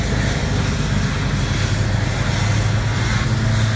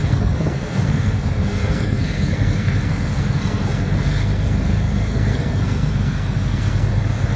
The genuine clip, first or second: first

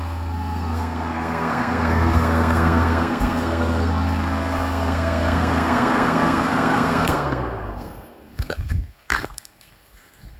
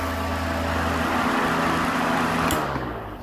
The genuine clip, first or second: second